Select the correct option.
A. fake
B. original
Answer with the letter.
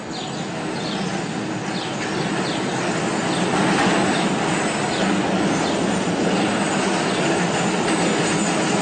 B